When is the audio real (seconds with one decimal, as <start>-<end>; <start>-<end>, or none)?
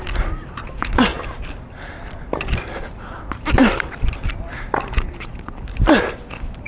0.0-6.7